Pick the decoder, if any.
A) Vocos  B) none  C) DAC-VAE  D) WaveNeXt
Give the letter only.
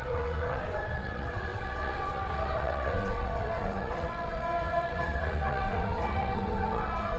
D